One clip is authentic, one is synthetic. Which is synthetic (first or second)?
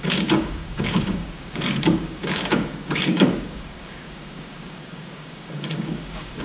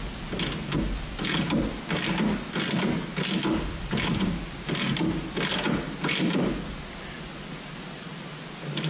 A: first